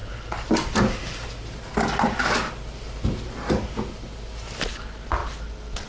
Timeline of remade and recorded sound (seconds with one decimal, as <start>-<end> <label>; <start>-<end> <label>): 0.0-5.9 recorded